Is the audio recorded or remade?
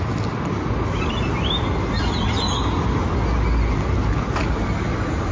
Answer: recorded